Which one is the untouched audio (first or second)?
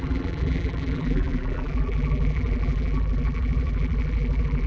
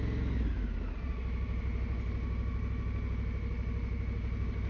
second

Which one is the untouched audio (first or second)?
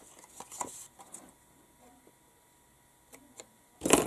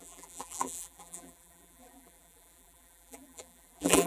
first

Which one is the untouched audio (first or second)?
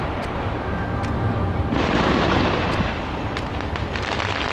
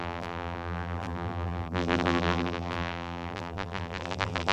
first